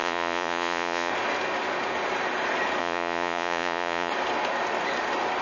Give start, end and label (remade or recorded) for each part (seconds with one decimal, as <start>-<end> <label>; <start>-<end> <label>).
0.0-1.1 remade; 1.1-2.8 recorded; 2.8-4.1 remade; 4.1-5.4 recorded